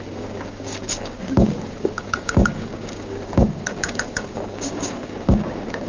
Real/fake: fake